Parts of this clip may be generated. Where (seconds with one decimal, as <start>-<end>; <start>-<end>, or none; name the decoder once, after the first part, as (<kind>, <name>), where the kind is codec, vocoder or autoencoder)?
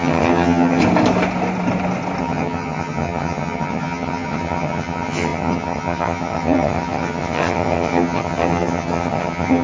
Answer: 0.0-0.8 (vocoder, HiFi-GAN); 2.2-9.6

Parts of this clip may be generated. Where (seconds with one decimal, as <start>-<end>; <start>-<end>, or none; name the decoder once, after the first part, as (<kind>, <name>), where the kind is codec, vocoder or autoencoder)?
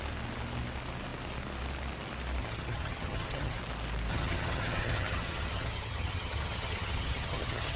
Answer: 2.4-3.6 (vocoder, HiFi-GAN); 4.1-7.8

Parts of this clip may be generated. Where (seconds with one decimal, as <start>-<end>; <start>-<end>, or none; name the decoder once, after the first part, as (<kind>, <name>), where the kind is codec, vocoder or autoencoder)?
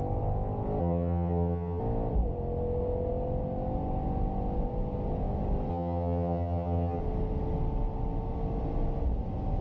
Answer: 0.8-1.8 (vocoder, HiFi-GAN); 5.7-7.0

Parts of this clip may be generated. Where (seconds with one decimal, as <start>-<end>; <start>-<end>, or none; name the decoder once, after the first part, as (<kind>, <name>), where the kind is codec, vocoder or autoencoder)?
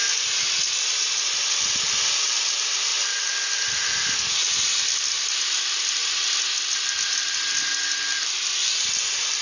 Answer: none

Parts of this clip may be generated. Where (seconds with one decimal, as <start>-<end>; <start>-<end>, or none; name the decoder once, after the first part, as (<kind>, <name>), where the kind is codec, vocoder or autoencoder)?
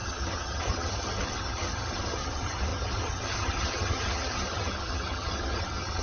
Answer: 0.0-6.0 (vocoder, HiFi-GAN)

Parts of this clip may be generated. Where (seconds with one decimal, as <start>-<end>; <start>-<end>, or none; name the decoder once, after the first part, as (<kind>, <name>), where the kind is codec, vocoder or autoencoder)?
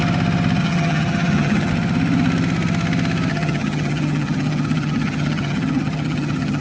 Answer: 0.6-1.7 (vocoder, HiFi-GAN); 3.3-6.6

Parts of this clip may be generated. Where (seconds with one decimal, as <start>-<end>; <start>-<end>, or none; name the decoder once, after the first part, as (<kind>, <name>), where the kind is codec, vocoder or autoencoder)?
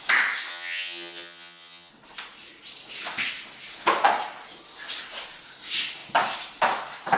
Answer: 0.5-1.9 (vocoder, HiFi-GAN)